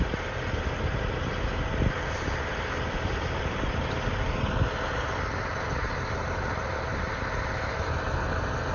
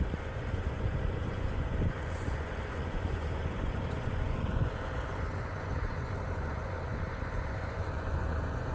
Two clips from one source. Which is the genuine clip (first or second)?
first